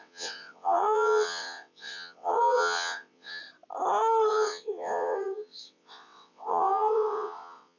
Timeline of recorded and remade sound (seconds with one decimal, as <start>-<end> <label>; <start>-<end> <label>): 0.0-3.4 remade; 3.4-4.3 recorded; 4.3-7.8 remade